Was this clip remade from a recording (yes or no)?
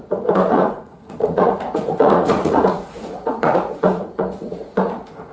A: yes